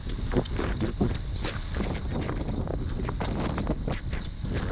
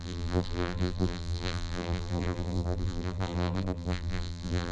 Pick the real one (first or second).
first